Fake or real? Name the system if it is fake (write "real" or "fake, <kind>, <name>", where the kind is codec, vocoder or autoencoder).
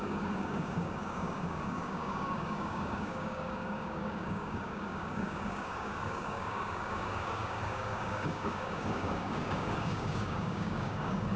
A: fake, codec, DAC